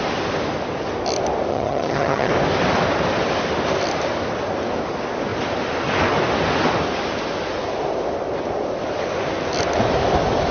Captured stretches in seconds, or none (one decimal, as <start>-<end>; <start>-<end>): 0.0-1.5; 2.3-10.5